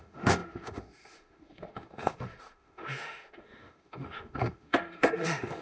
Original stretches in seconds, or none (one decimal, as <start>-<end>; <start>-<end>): none